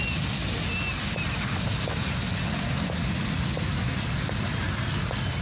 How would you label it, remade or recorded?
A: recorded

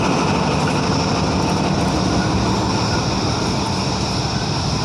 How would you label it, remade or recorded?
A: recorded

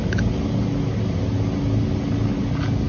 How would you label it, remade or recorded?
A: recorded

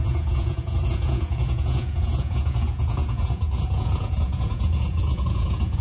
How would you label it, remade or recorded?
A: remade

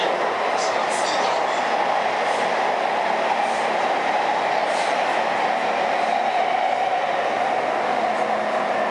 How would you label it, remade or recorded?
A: recorded